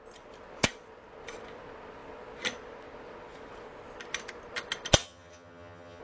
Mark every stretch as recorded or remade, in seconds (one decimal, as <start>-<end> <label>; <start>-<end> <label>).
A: 0.0-5.0 recorded; 5.0-6.0 remade